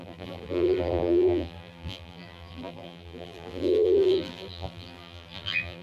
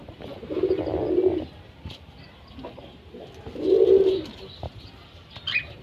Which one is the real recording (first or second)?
second